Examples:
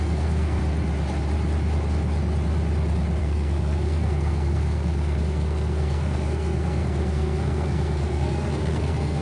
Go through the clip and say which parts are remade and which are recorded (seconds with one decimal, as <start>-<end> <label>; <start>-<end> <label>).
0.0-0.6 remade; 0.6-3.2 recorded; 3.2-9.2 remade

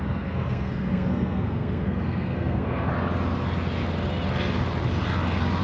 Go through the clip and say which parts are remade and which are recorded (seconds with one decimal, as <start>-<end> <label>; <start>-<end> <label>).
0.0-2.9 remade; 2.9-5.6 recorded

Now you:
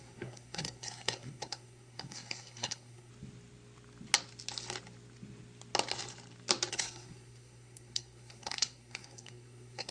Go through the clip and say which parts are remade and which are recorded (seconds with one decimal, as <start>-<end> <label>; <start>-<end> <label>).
0.0-3.1 remade; 3.1-6.7 recorded; 6.7-9.9 remade